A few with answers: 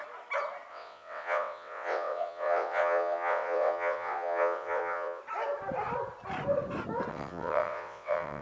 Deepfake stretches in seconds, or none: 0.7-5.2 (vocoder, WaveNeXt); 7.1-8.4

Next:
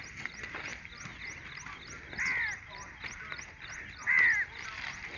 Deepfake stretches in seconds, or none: none

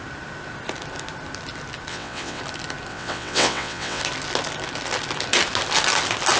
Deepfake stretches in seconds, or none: 1.9-2.4 (vocoder, WaveNeXt); 2.9-4.0